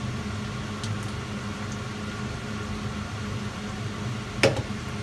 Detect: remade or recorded recorded